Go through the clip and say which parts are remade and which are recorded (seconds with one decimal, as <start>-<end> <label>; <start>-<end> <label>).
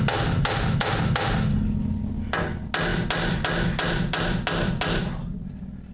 0.0-5.9 recorded